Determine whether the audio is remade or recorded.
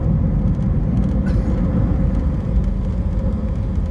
recorded